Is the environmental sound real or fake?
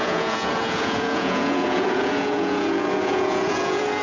fake